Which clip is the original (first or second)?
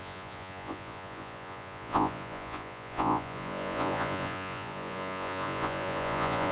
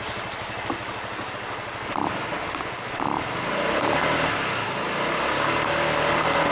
second